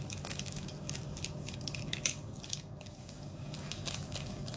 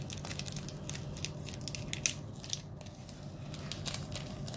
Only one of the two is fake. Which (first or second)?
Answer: first